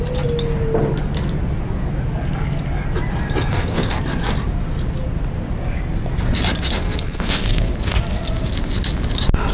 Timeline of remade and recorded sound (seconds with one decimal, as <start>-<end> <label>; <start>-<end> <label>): 0.0-3.5 recorded; 3.5-4.0 remade; 4.0-6.8 recorded; 6.8-7.7 remade; 7.7-9.5 recorded